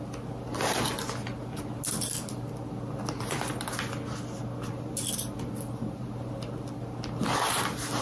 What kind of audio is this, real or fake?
real